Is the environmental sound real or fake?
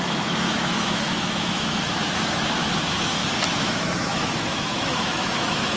fake